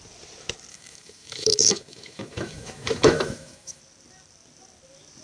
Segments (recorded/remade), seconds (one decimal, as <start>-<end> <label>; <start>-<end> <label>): 0.0-0.7 recorded; 0.7-3.8 remade; 3.8-5.2 recorded